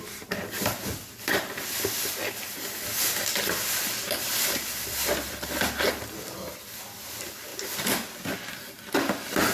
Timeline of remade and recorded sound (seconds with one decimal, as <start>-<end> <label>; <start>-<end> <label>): 0.0-9.5 recorded